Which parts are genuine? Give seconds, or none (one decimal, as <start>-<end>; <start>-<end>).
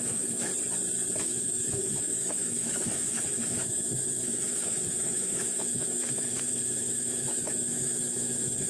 0.5-1.2